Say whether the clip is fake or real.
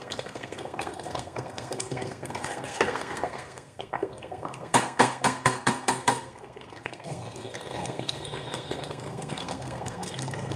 fake